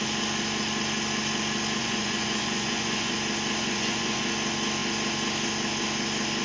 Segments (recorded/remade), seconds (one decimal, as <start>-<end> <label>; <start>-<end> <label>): 0.0-1.8 recorded; 1.8-3.1 remade; 3.1-3.6 recorded; 3.6-4.2 remade; 4.2-6.4 recorded

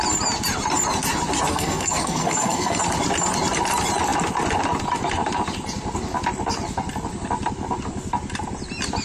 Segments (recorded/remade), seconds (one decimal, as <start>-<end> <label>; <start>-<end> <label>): 0.0-1.5 recorded; 1.5-2.8 remade; 2.8-9.0 recorded

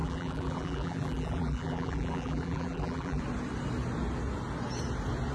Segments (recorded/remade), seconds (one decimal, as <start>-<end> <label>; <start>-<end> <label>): 0.0-3.2 remade; 3.2-5.3 recorded

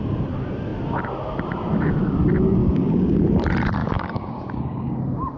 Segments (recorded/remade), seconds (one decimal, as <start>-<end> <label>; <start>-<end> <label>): 0.0-2.6 recorded; 2.6-3.2 remade; 3.2-3.8 recorded; 3.8-5.0 remade; 5.0-5.4 recorded

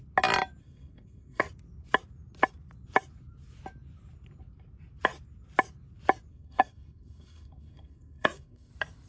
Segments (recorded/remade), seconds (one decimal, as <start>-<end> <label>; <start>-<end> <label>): 0.0-0.6 recorded; 0.6-1.4 remade; 1.4-6.3 recorded; 6.3-8.7 remade; 8.7-9.1 recorded